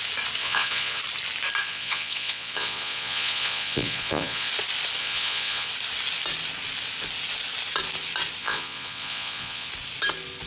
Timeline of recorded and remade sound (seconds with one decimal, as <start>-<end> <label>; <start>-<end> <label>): 0.0-0.4 recorded; 0.4-1.0 remade; 1.0-1.6 recorded; 1.6-4.5 remade; 4.5-5.0 recorded; 5.0-5.7 remade; 5.7-8.4 recorded; 8.4-9.7 remade; 9.7-10.5 recorded